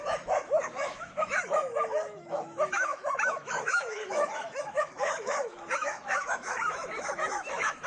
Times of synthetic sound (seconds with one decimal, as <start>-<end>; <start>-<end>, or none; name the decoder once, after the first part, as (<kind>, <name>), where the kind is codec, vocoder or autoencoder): 0.0-7.9 (autoencoder, DAC-VAE)